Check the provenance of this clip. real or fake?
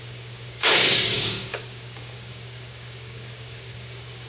fake